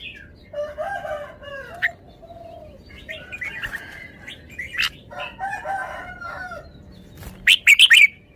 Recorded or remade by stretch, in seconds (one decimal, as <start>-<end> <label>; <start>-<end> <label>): 0.0-8.4 recorded

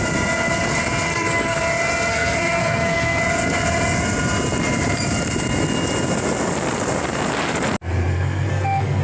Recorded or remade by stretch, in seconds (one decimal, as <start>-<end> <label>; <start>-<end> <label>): 0.0-1.1 recorded; 1.1-1.6 remade; 1.6-2.1 recorded; 2.1-3.2 remade; 3.2-8.1 recorded; 8.1-9.0 remade

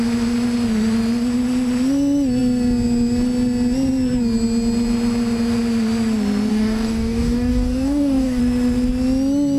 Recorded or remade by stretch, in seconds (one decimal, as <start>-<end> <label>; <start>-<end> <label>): 0.0-6.5 recorded; 6.5-8.4 remade; 8.4-9.6 recorded

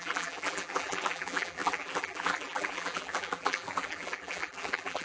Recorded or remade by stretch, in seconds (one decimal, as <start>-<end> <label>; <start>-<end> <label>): 0.0-5.0 remade

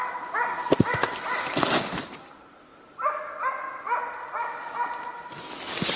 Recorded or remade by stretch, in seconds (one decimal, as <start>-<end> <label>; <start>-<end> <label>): 0.0-6.0 recorded

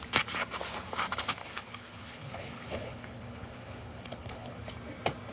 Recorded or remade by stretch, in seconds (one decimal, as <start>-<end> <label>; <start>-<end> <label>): 0.0-1.4 recorded; 1.4-4.6 remade; 4.6-5.3 recorded

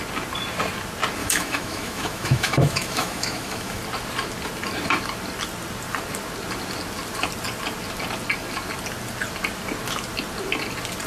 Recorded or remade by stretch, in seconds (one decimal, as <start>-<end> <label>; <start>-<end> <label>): 0.0-1.2 recorded; 1.2-3.8 remade; 3.8-11.1 recorded